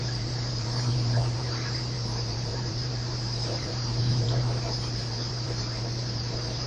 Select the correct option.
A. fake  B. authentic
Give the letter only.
A